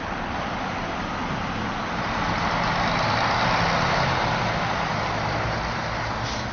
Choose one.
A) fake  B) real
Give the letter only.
B